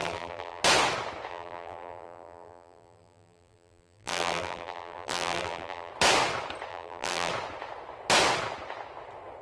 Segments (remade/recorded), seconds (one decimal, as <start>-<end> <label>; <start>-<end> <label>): 0.0-0.6 remade; 0.6-1.3 recorded; 1.3-5.9 remade; 5.9-6.7 recorded; 6.7-7.3 remade; 7.3-9.4 recorded